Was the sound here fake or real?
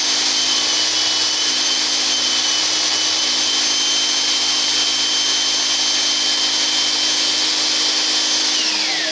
real